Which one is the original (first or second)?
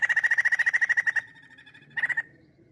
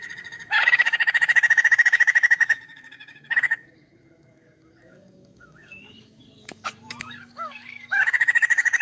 first